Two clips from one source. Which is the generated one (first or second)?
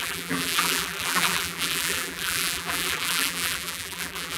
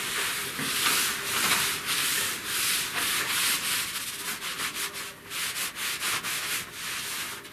first